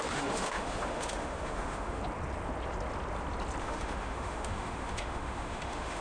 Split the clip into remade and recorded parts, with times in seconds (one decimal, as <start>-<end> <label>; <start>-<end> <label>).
0.0-2.0 remade; 2.0-3.6 recorded; 3.6-6.0 remade

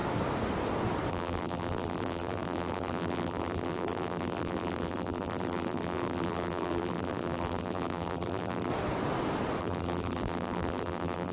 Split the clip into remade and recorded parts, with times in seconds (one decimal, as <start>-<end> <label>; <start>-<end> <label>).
0.0-1.1 recorded; 1.1-8.7 remade; 8.7-9.6 recorded; 9.6-11.3 remade

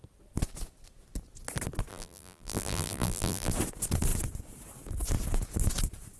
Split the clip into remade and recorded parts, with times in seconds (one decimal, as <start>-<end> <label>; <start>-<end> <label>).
0.0-1.9 recorded; 1.9-3.5 remade; 3.5-6.2 recorded

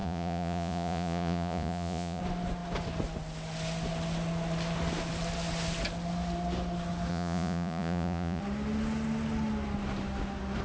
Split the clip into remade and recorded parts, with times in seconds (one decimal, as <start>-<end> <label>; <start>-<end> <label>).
0.0-2.2 remade; 2.2-7.1 recorded; 7.1-8.4 remade; 8.4-10.6 recorded

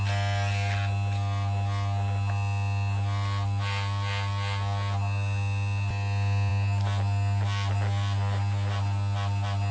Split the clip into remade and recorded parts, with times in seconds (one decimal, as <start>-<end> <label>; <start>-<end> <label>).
0.0-9.7 recorded

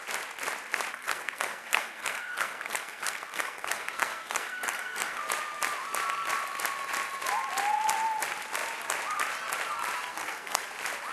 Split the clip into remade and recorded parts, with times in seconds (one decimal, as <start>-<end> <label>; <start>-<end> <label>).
0.0-0.9 recorded; 0.9-5.2 remade; 5.2-10.1 recorded; 10.1-10.7 remade; 10.7-11.1 recorded

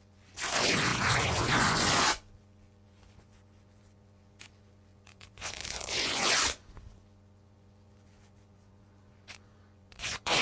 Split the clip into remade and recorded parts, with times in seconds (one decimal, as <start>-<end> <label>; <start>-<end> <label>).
0.0-10.4 remade

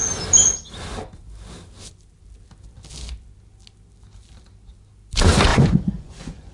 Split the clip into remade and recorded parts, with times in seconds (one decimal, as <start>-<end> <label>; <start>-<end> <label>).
0.0-5.5 recorded; 5.5-6.5 remade